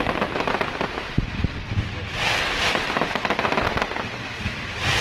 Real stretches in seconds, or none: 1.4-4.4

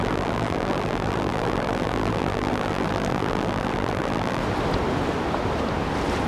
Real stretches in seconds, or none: 4.4-6.3

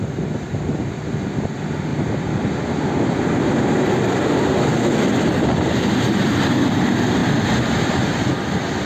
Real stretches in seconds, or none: 0.0-8.9

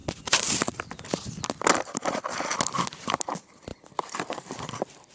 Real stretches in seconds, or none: 1.4-3.7; 4.6-5.1

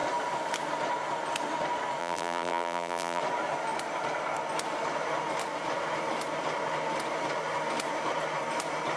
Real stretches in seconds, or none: 0.0-2.0; 3.2-9.0

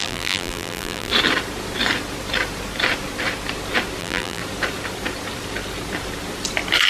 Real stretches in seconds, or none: 1.1-4.0; 4.4-6.9

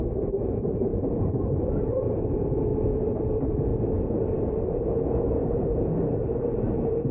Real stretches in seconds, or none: 3.7-4.2

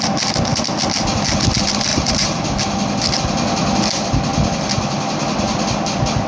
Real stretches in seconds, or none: 0.0-1.9; 2.6-6.3